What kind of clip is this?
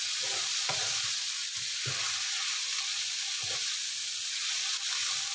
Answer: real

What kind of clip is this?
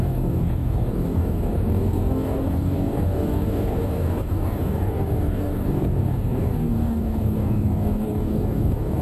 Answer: fake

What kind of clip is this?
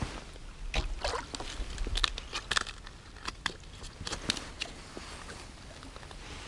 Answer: real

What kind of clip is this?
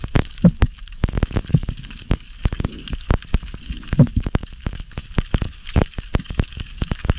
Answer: fake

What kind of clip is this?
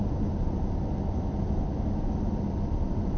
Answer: real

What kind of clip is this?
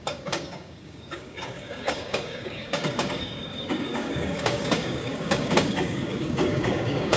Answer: fake